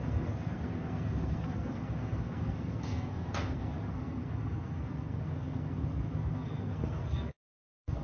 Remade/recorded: remade